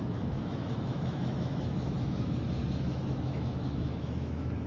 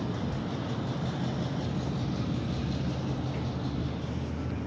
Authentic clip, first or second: second